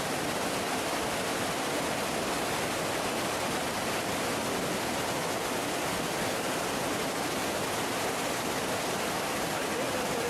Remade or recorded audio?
recorded